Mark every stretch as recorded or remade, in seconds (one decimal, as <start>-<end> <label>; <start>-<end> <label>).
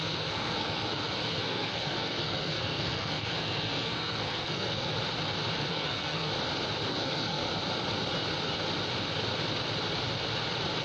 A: 0.0-4.9 remade; 4.9-5.7 recorded; 5.7-6.3 remade; 6.3-6.9 recorded; 6.9-7.4 remade; 7.4-10.8 recorded